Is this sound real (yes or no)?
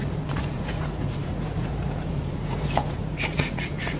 no